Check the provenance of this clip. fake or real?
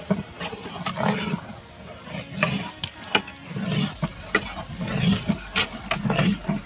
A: real